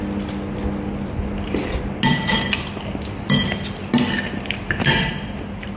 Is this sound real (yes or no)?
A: yes